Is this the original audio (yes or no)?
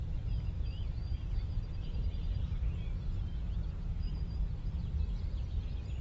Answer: no